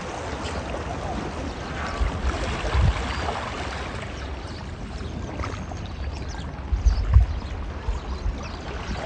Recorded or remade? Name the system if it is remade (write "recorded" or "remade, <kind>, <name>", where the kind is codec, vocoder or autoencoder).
recorded